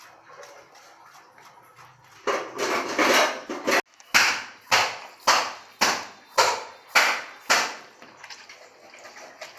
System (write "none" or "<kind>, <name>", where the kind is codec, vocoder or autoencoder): none